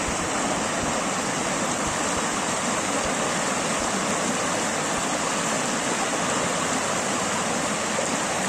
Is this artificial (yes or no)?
no